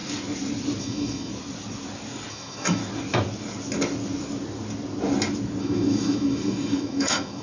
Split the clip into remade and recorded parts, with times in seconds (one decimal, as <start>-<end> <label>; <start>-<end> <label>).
0.0-0.8 recorded; 0.8-1.3 remade; 1.3-2.3 recorded; 2.3-2.8 remade; 2.8-5.6 recorded; 5.6-7.4 remade